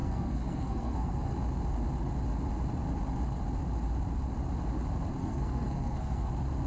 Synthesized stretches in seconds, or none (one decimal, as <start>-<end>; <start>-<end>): 0.0-1.3; 5.2-6.3